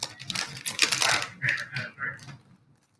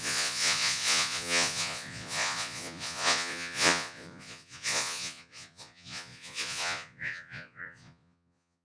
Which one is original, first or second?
first